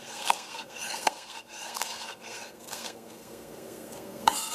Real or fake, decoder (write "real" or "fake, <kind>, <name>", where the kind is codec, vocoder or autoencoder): fake, codec, SNAC